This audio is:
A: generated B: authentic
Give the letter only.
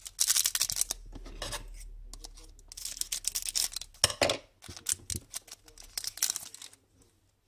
B